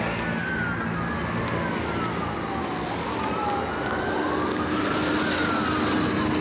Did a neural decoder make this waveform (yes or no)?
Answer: no